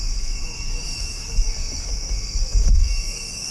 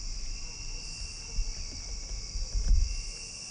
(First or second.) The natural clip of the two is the second